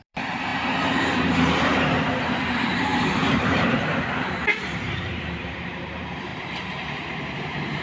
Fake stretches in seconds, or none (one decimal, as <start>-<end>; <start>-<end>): 0.0-7.8